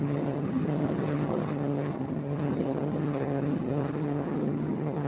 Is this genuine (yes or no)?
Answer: no